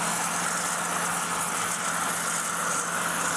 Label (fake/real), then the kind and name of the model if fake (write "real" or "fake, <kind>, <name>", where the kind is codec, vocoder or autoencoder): real